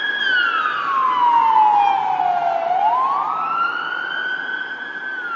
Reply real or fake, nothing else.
real